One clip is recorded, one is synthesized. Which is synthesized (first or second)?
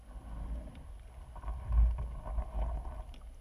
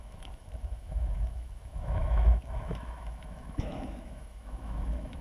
second